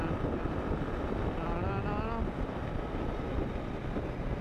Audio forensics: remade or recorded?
recorded